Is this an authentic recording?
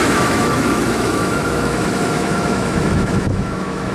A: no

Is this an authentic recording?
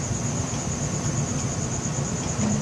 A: yes